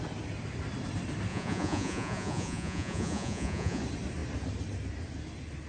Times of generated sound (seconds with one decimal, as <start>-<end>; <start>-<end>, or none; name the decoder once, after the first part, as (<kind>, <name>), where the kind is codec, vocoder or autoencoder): 1.3-3.8 (vocoder, Vocos)